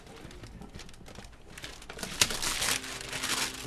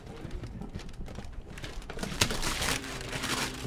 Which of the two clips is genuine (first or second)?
first